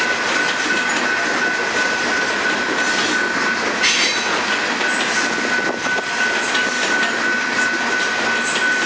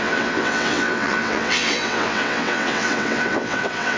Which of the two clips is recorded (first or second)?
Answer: first